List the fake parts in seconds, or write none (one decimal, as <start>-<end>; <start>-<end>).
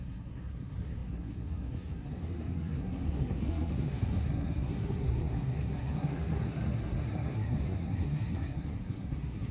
0.0-9.5